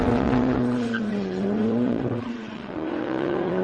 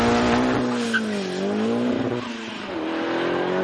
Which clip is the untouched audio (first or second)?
second